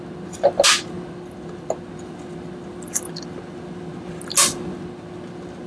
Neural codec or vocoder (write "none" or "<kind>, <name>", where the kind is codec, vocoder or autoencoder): none